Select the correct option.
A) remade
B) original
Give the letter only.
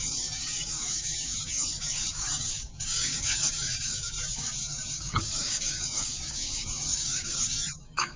A